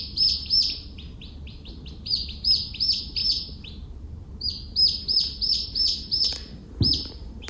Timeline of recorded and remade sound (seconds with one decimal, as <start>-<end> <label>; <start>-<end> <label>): 0.0-3.2 recorded; 3.2-4.4 remade; 4.4-7.5 recorded